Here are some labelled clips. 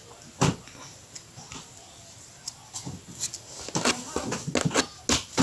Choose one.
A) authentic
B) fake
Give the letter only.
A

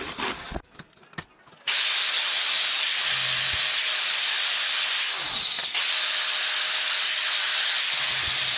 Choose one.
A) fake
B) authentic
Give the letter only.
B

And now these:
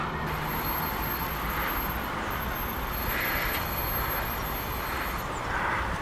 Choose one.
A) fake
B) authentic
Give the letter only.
B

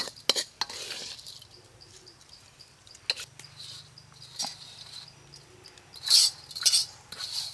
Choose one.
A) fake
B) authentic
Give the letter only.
B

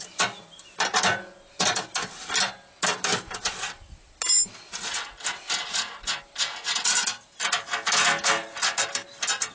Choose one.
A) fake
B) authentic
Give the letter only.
B